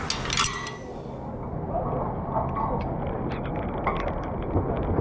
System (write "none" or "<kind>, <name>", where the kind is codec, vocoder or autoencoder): none